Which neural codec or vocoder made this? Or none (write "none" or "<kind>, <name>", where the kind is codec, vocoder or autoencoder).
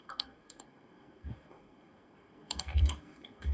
codec, SNAC